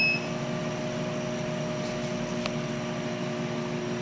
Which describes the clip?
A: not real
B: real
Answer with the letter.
B